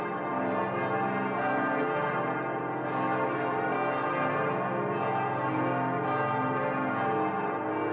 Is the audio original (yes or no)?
yes